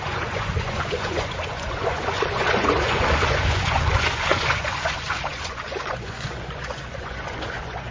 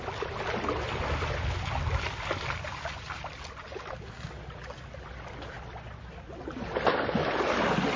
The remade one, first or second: first